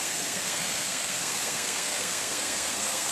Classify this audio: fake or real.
fake